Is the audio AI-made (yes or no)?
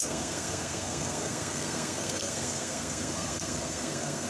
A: yes